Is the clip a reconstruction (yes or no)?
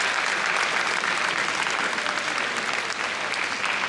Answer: no